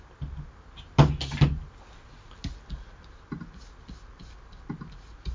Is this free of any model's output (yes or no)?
yes